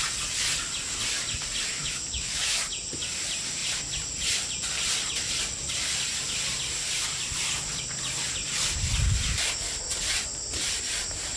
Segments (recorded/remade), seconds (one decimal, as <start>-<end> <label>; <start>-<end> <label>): 0.0-1.7 recorded; 1.7-2.6 remade; 2.6-11.4 recorded